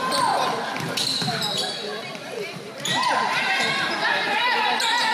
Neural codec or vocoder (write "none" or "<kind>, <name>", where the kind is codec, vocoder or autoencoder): vocoder, BigVGAN v2